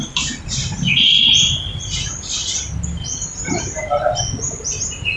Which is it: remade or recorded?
recorded